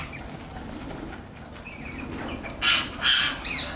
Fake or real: real